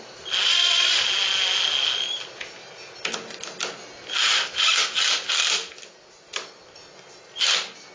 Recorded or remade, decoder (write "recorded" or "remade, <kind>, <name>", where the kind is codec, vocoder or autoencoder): recorded